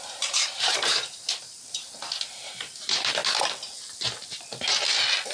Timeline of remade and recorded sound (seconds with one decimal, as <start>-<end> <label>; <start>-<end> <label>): 0.0-3.2 remade; 3.2-5.3 recorded